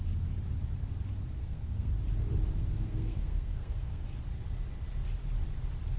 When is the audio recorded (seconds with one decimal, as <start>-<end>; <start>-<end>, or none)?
0.0-1.4; 1.9-2.6; 4.1-6.0